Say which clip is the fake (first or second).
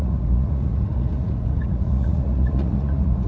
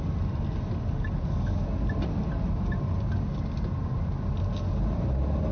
first